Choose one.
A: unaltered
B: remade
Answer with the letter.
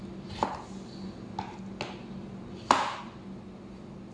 A